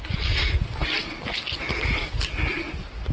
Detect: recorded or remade recorded